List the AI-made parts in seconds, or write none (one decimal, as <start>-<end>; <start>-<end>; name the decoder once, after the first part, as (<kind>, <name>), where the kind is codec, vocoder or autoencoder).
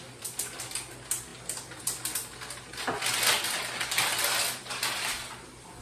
none